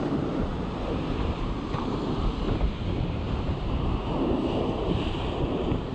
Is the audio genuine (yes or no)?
no